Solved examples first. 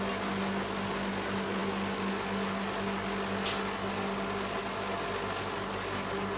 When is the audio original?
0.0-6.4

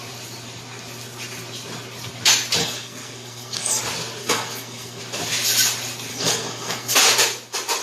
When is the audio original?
0.0-2.6; 3.8-4.2; 5.0-6.1; 7.0-7.8

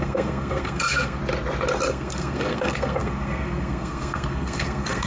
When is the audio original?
1.2-1.9

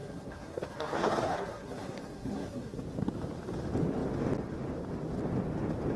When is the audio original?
2.8-6.0

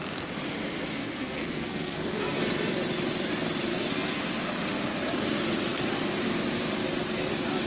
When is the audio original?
0.0-1.0; 2.4-3.7; 4.2-7.7